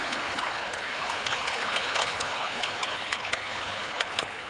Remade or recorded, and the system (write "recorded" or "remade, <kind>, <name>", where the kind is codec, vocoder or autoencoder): remade, codec, HILCodec